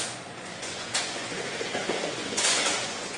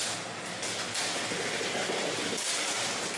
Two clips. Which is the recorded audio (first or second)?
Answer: second